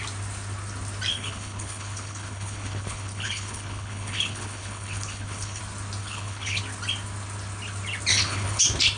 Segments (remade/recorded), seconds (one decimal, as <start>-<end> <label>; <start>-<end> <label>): 0.0-1.1 recorded; 1.1-5.6 remade; 5.6-6.0 recorded; 6.0-6.6 remade; 6.6-8.1 recorded; 8.1-8.6 remade; 8.6-9.0 recorded